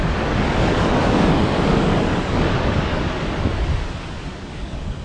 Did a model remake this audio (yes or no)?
yes